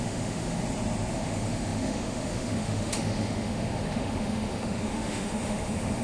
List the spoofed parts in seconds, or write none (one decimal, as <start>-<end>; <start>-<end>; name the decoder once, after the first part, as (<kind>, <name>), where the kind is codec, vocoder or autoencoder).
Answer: 0.0-0.6 (autoencoder, DAC-VAE); 1.1-6.0